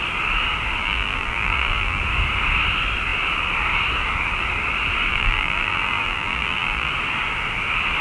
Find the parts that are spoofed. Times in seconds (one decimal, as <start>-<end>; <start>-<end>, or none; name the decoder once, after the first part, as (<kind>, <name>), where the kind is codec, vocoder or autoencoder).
0.8-2.0 (vocoder, BigVGAN v2); 5.1-6.9